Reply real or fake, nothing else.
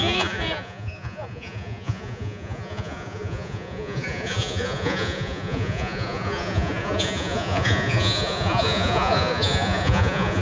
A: fake